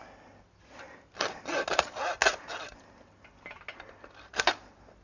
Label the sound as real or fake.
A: real